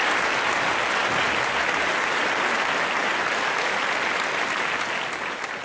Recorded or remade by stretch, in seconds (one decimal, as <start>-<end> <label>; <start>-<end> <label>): 0.0-5.6 recorded

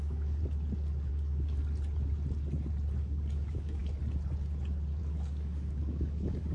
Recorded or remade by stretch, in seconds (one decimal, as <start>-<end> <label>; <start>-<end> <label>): 0.0-0.4 remade; 0.4-1.1 recorded; 1.1-1.6 remade; 1.6-3.0 recorded; 3.0-3.8 remade; 3.8-5.0 recorded; 5.0-6.5 remade

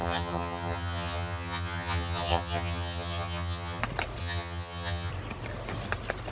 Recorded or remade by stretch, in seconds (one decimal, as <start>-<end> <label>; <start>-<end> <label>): 0.0-3.8 remade; 3.8-4.2 recorded; 4.2-5.1 remade; 5.1-6.3 recorded

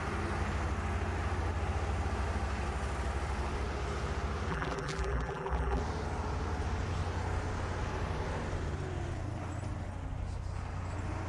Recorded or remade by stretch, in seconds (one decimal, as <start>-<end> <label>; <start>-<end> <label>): 0.0-4.5 recorded; 4.5-5.8 remade; 5.8-11.3 recorded

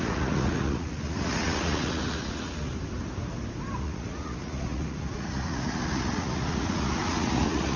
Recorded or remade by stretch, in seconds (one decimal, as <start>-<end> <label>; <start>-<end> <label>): 0.0-2.7 remade; 2.7-3.8 recorded; 3.8-7.8 remade

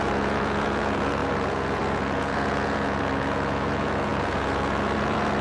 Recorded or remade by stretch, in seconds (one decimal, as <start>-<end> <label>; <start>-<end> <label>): 0.0-5.4 remade

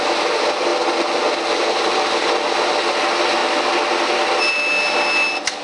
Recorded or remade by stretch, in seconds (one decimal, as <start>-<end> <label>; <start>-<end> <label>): 0.0-5.6 recorded

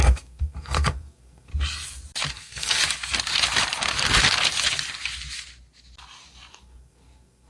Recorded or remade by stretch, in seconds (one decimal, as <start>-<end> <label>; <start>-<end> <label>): 0.0-1.5 remade; 1.5-2.3 recorded; 2.3-2.8 remade; 2.8-6.5 recorded; 6.5-7.5 remade